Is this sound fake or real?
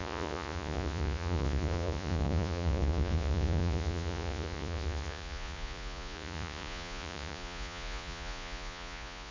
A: fake